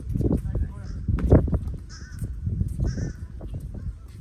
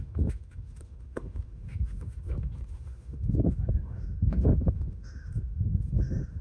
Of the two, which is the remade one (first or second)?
second